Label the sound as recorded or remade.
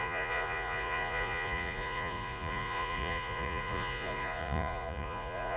remade